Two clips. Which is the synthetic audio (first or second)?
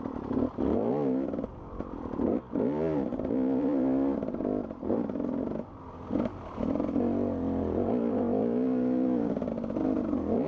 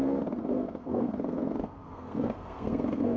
second